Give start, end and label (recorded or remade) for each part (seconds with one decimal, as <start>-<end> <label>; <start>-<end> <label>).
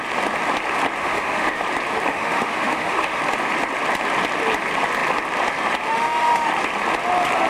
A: 0.0-1.0 recorded; 1.0-1.6 remade; 1.6-2.1 recorded; 2.1-3.2 remade; 3.2-5.9 recorded; 5.9-6.5 remade; 6.5-7.5 recorded